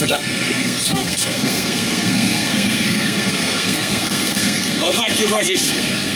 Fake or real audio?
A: fake